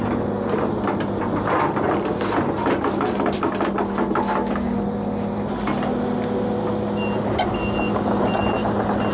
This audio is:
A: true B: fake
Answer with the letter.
A